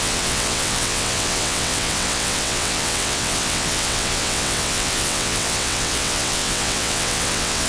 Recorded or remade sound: remade